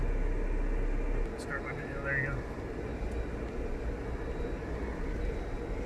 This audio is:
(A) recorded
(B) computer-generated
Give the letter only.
A